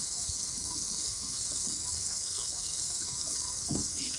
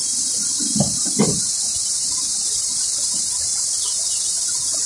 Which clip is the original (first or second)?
second